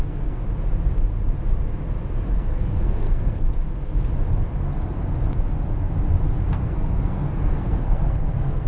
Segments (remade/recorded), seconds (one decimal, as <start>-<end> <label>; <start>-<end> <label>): 0.0-0.4 remade; 0.4-2.3 recorded; 2.3-3.5 remade; 3.5-6.4 recorded; 6.4-8.7 remade